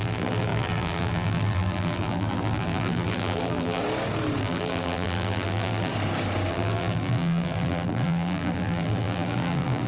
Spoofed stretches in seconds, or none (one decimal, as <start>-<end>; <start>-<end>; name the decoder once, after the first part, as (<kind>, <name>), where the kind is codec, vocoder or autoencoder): 0.0-3.8 (vocoder, BigVGAN v2); 4.4-5.9; 6.5-9.9